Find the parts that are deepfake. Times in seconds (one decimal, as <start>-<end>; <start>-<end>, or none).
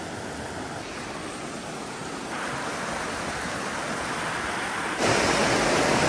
none